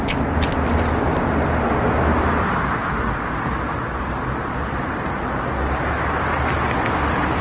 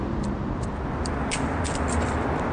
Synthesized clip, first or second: second